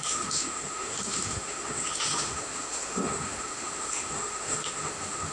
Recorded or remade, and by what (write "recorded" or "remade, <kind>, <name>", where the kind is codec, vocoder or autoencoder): remade, autoencoder, DAC-VAE